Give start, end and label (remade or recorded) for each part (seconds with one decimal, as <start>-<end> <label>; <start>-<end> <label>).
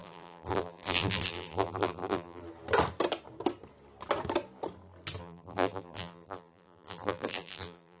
0.0-2.4 remade; 2.4-5.2 recorded; 5.2-8.0 remade